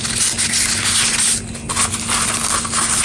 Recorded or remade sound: recorded